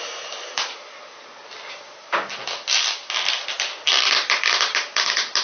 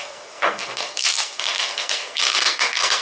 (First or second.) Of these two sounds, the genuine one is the first